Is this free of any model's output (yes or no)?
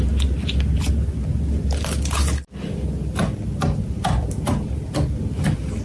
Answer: yes